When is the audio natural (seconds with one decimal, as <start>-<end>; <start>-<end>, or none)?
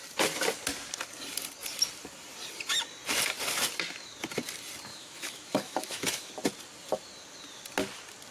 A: 0.0-4.9; 6.3-8.3